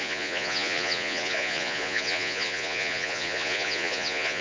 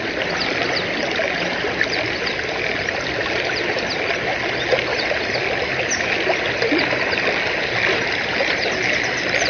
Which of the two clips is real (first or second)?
second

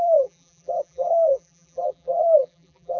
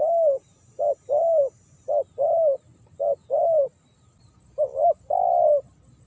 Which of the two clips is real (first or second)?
second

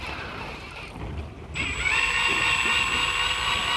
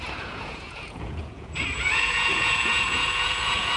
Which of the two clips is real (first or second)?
first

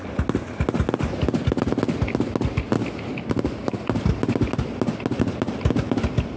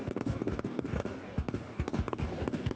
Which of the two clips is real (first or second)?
first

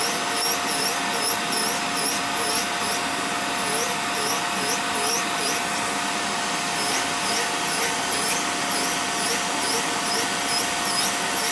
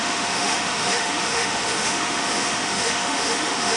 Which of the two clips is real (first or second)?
first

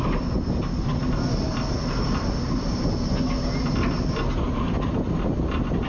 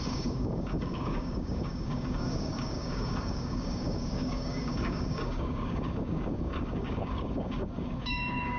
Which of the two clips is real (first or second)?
first